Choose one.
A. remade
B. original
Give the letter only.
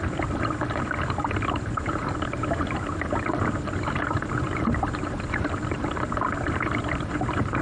A